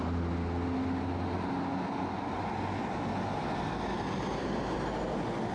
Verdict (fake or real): real